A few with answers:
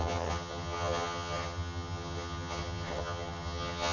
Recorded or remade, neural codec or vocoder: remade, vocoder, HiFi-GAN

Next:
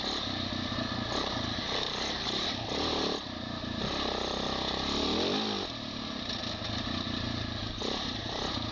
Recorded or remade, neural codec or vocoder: recorded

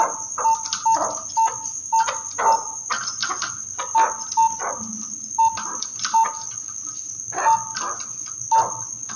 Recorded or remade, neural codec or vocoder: recorded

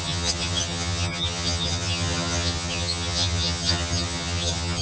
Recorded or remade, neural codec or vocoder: remade, vocoder, HiFi-GAN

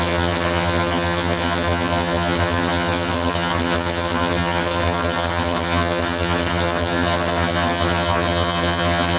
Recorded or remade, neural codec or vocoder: remade, vocoder, HiFi-GAN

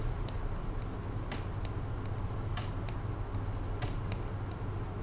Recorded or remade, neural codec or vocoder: recorded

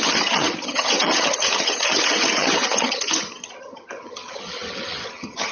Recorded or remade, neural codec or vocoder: remade, vocoder, HiFi-GAN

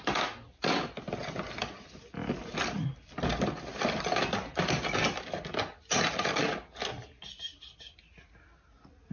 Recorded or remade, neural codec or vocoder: recorded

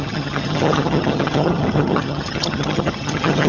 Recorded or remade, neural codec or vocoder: remade, vocoder, HiFi-GAN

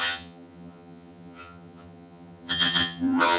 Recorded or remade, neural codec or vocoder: remade, vocoder, HiFi-GAN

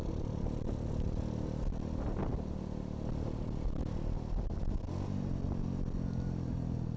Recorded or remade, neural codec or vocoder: recorded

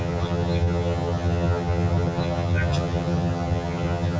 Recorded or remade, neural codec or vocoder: remade, vocoder, HiFi-GAN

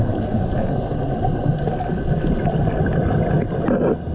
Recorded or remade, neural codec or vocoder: recorded